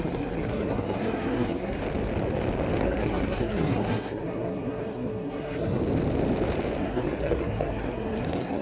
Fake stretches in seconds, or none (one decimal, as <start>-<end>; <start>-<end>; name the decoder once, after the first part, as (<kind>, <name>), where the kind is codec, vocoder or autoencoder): 0.0-1.8 (codec, SNAC); 2.8-5.8; 6.8-8.6